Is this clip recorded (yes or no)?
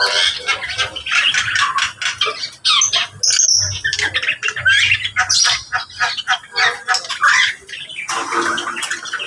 yes